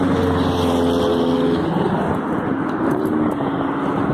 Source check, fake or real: real